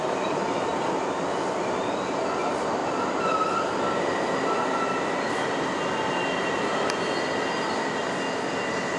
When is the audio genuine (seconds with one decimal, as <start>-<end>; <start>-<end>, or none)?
0.0-9.0